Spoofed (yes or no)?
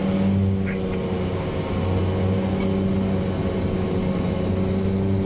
no